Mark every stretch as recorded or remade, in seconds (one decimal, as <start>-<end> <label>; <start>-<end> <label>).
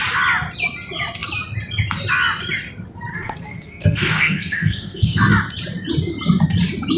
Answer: 0.0-3.1 recorded; 3.1-5.3 remade; 5.3-7.0 recorded